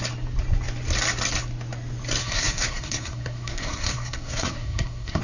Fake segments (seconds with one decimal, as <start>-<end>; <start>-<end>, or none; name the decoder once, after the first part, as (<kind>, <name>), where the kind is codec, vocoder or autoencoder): 2.2-5.2 (codec, SNAC)